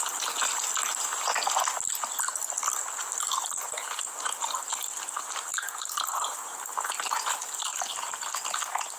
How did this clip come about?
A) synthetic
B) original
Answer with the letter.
B